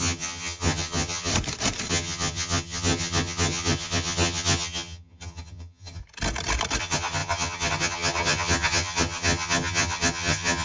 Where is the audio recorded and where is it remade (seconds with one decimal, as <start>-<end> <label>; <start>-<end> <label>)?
0.0-1.3 remade; 1.3-1.9 recorded; 1.9-6.0 remade; 6.0-6.8 recorded; 6.8-10.6 remade